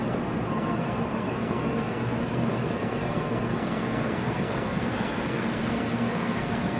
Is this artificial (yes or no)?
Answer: yes